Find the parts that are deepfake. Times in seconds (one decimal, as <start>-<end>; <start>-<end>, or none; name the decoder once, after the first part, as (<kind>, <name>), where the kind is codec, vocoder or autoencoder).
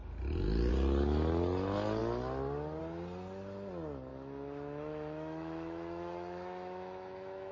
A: 4.1-7.5 (autoencoder, DAC-VAE)